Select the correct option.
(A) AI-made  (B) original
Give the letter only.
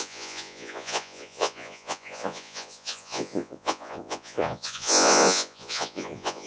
A